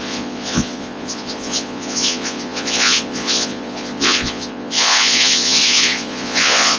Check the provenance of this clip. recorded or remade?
remade